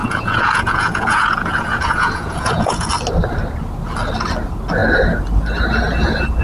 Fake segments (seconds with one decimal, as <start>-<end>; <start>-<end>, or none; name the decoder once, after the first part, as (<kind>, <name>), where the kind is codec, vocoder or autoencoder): 0.0-2.9 (vocoder, Vocos)